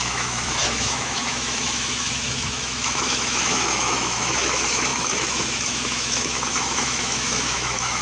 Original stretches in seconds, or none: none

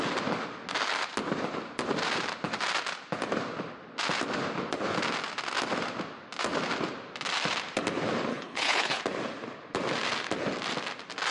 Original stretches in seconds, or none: 0.0-8.3; 9.0-11.3

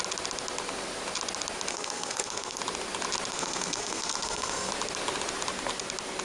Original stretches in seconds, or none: 0.0-1.7; 2.6-3.3; 4.7-6.2

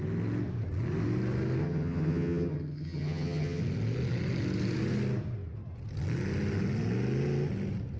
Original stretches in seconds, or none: 0.0-1.6; 3.6-8.0

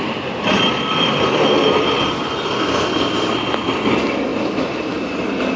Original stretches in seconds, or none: 0.0-5.6

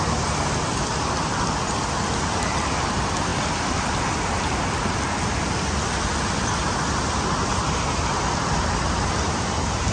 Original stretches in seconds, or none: 0.0-9.9